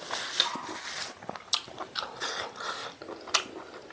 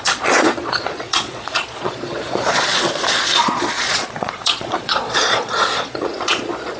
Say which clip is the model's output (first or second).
second